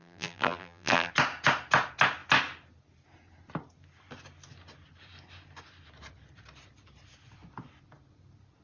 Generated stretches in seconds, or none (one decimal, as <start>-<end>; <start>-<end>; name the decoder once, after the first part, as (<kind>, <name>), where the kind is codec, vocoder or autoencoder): 0.0-1.1 (vocoder, BigVGAN v2)